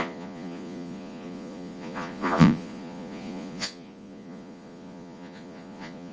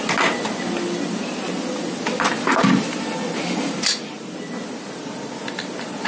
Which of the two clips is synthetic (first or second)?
first